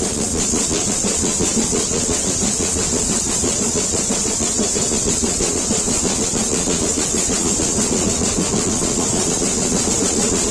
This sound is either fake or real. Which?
fake